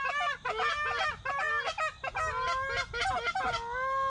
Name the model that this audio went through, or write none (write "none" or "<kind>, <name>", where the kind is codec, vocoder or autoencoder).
none